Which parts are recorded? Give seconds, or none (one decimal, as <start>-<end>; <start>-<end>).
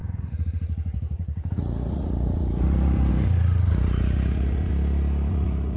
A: 4.7-5.3